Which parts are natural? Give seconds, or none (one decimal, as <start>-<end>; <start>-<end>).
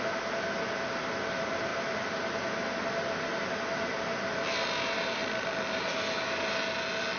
0.0-1.7; 2.5-5.2; 5.9-7.2